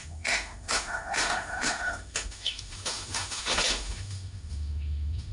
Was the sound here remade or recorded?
remade